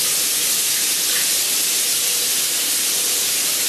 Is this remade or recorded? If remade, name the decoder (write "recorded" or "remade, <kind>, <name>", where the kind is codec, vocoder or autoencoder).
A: recorded